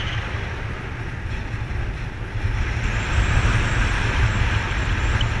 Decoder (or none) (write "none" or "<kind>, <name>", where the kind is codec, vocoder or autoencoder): none